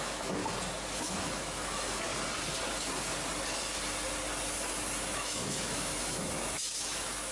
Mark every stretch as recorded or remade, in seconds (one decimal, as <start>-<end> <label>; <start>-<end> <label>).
0.0-0.4 remade; 0.4-1.0 recorded; 1.0-2.1 remade; 2.1-5.0 recorded; 5.0-7.3 remade